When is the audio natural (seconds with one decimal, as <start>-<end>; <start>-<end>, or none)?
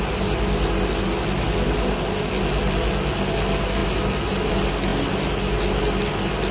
0.0-6.5